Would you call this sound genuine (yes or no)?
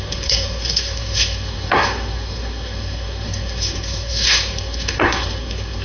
no